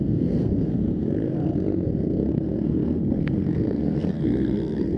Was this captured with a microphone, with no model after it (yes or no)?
no